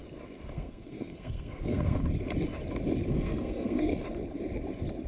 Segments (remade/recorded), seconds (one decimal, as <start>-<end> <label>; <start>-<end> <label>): 0.0-0.5 recorded; 0.5-2.0 remade; 2.0-3.1 recorded; 3.1-3.9 remade; 3.9-5.1 recorded